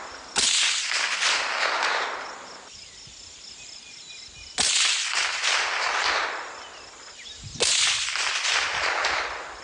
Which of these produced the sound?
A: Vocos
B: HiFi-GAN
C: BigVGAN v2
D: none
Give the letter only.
D